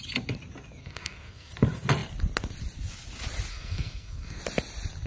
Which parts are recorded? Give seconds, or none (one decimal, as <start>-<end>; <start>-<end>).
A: 0.0-0.8; 1.5-3.5; 4.4-5.1